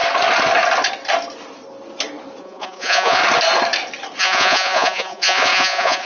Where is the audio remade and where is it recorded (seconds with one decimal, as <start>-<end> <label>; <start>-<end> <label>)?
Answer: 0.0-2.4 recorded; 2.4-3.2 remade; 3.2-4.2 recorded; 4.2-6.1 remade